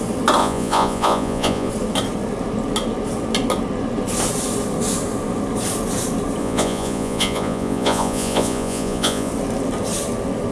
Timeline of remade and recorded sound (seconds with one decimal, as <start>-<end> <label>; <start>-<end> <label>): 0.0-0.4 recorded; 0.4-1.7 remade; 1.7-6.4 recorded; 6.4-9.3 remade; 9.3-10.5 recorded